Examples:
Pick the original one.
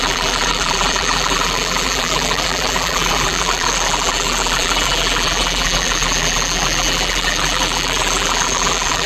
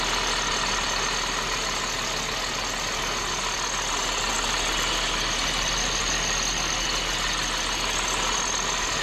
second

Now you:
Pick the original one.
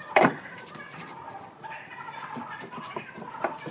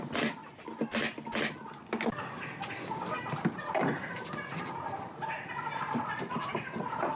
second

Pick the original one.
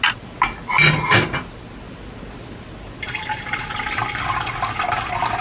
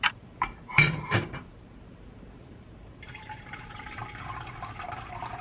first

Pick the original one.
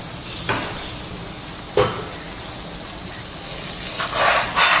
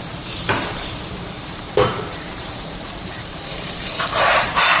first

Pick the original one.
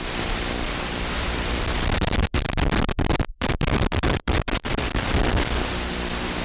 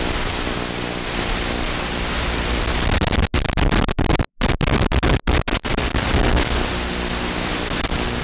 second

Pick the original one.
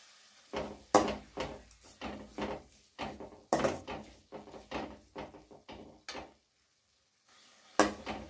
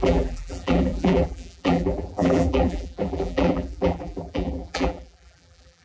first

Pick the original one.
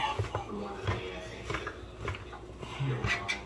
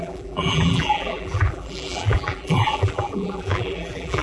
first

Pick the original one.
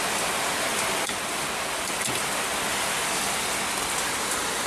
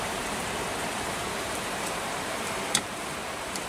first